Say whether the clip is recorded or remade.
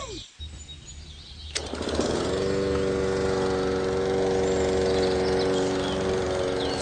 recorded